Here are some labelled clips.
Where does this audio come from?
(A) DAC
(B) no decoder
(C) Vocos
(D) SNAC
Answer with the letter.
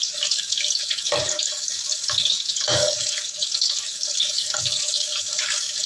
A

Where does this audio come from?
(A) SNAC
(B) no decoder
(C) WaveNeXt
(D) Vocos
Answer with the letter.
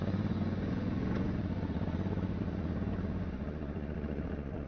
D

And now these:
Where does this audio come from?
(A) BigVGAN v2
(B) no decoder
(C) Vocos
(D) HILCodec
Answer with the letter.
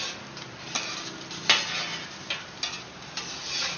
B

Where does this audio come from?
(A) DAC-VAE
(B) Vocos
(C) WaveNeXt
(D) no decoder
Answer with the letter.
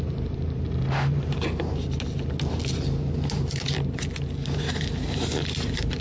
D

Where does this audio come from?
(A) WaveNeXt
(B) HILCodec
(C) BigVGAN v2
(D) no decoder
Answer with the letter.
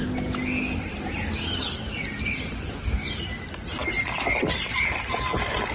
D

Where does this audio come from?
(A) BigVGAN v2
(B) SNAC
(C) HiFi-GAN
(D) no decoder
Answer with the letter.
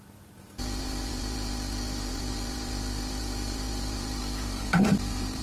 A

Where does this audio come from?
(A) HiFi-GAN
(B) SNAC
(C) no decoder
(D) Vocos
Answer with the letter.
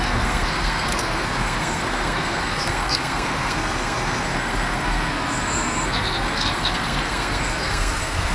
B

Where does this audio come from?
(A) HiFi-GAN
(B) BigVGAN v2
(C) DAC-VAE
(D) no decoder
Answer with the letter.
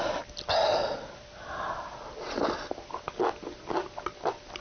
D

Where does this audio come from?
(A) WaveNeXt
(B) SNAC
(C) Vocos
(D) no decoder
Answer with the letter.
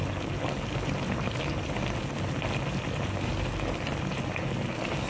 D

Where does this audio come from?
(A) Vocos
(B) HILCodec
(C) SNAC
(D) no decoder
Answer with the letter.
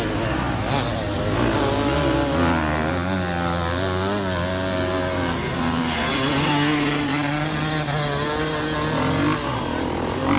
D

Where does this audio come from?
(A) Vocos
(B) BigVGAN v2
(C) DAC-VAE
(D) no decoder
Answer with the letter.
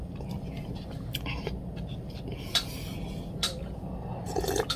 D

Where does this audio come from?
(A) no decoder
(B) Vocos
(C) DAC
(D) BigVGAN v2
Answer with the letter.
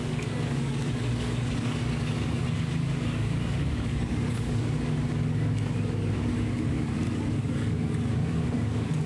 C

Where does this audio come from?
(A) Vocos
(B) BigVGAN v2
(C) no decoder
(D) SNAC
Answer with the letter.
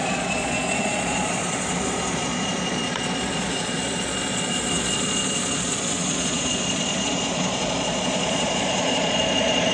A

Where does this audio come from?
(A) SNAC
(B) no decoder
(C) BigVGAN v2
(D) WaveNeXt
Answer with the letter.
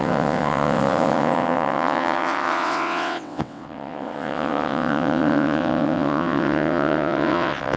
D